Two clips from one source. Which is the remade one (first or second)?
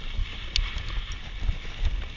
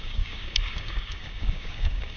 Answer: second